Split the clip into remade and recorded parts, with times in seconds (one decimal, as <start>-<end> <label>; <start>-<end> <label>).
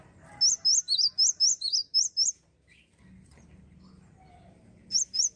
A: 0.0-5.4 recorded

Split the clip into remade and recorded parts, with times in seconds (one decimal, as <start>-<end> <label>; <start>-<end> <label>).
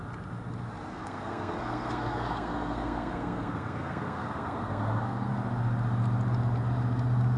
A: 0.0-0.9 recorded; 0.9-5.3 remade; 5.3-7.4 recorded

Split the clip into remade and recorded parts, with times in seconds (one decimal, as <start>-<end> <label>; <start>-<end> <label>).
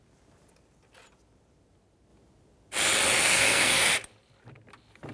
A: 0.0-3.2 recorded; 3.2-3.9 remade; 3.9-5.1 recorded